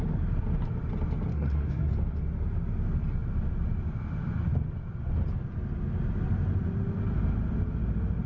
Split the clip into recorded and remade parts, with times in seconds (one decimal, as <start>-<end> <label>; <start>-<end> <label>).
0.0-1.3 recorded; 1.3-1.9 remade; 1.9-8.3 recorded